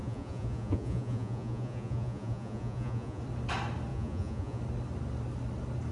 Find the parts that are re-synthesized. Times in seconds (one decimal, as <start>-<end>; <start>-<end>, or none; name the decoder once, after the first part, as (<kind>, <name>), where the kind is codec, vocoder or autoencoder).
0.0-3.2 (vocoder, Vocos); 3.9-4.6